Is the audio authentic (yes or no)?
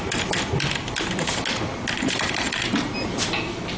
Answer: yes